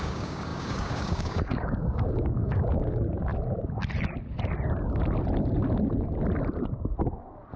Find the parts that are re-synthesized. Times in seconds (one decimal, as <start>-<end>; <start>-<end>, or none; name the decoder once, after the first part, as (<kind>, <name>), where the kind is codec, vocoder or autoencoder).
0.0-3.3 (codec, DAC)